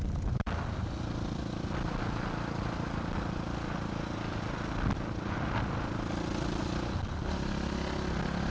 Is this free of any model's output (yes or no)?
yes